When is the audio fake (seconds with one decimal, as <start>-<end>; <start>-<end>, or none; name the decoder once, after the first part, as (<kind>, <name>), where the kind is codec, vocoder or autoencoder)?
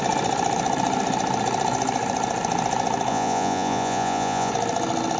3.1-4.5 (vocoder, Vocos)